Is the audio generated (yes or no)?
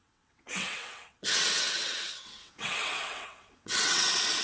yes